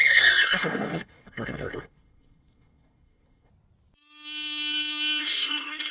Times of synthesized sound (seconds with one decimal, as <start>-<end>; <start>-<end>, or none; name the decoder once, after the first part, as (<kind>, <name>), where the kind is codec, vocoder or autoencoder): 0.0-3.5 (codec, SNAC); 5.2-5.9

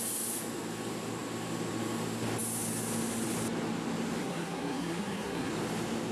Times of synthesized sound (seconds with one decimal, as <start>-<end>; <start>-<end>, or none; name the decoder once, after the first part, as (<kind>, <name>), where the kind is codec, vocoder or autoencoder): 4.2-5.5 (codec, SNAC)

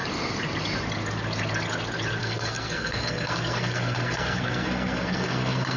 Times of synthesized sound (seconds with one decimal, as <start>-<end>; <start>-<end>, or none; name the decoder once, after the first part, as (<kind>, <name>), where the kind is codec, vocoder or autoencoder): 2.2-5.8 (codec, SNAC)

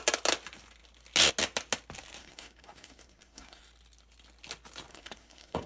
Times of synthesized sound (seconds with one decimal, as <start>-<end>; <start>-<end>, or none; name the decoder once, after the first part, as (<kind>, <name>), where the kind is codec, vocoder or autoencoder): 2.2-3.6 (codec, SNAC); 4.9-5.7

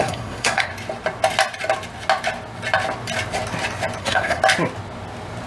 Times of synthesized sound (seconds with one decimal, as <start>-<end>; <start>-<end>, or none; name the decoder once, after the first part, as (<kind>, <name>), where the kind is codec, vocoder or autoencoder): 0.0-0.7 (codec, SNAC); 4.0-4.4